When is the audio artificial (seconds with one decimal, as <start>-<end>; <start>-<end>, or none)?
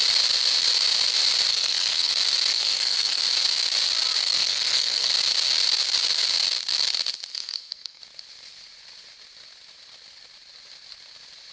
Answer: 1.5-2.1; 2.5-3.2; 4.2-5.1; 7.3-8.0